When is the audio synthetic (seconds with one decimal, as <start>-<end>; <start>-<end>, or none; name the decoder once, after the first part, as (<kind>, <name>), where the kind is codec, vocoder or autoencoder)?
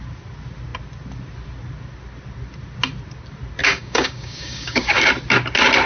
3.6-5.1 (codec, DAC)